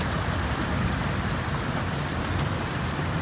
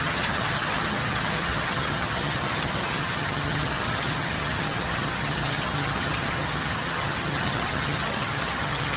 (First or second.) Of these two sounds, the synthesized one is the second